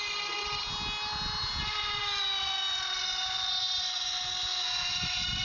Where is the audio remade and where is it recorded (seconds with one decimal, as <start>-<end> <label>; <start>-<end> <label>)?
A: 0.0-5.4 recorded